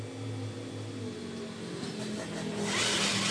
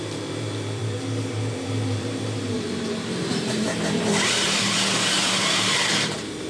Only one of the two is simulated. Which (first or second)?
second